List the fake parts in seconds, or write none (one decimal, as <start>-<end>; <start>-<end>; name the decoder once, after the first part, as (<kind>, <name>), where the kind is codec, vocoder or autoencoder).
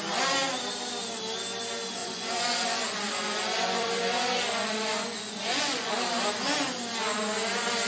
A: 2.0-5.9 (vocoder, Vocos)